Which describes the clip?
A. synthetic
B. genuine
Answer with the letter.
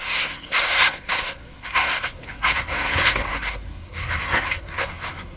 A